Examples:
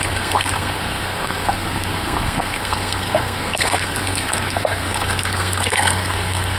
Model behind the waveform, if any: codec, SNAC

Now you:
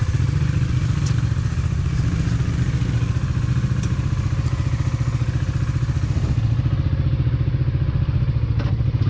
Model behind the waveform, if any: none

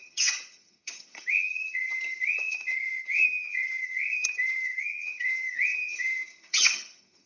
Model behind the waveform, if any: vocoder, HiFi-GAN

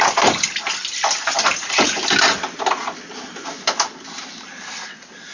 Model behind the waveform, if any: none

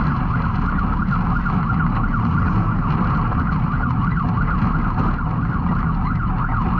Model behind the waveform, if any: none